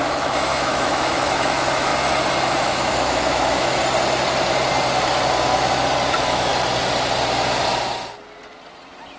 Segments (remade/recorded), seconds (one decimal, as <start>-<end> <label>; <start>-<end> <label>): 0.0-1.9 remade; 1.9-2.6 recorded; 2.6-3.8 remade; 3.8-6.1 recorded; 6.1-6.5 remade; 6.5-9.2 recorded